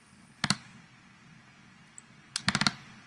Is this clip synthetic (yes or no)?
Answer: no